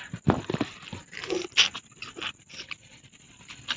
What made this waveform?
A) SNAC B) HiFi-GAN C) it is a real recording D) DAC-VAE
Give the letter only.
C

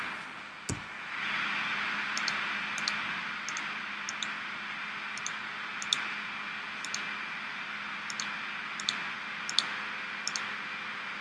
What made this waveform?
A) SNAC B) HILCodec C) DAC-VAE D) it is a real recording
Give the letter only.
D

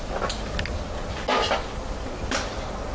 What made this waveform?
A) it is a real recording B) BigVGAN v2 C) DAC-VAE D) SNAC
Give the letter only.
A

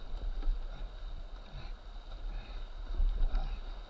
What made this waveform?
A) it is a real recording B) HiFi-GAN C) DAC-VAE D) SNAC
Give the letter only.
A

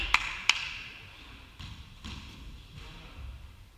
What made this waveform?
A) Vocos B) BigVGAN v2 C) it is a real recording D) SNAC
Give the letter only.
C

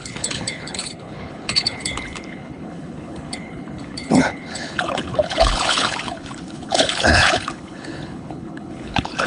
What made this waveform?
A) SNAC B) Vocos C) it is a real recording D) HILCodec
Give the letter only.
D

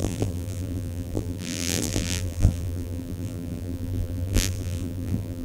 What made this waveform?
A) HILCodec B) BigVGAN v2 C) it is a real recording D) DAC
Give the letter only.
B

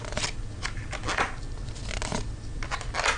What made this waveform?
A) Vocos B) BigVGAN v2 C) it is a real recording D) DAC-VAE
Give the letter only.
C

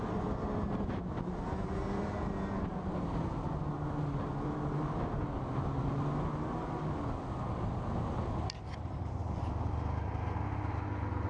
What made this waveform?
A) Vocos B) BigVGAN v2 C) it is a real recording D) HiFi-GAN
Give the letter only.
C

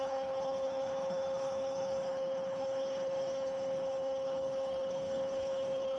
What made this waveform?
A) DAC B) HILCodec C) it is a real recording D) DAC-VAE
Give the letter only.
B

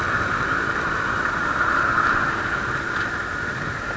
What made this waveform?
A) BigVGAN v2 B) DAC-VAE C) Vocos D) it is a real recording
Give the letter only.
D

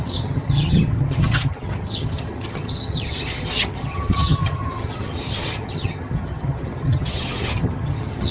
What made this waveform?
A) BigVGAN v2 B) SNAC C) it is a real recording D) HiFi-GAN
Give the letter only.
D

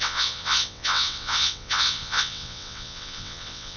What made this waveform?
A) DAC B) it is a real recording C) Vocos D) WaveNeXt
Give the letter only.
D